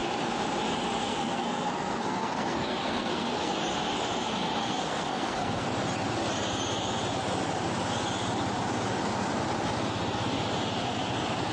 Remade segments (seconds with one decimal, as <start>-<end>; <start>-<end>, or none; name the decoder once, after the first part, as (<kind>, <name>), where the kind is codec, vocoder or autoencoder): 1.0-3.5 (codec, SNAC); 4.6-5.7